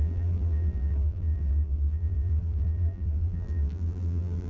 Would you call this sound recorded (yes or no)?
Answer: no